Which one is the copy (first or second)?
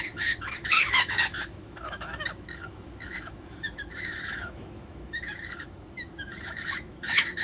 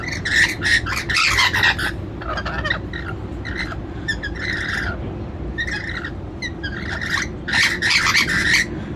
first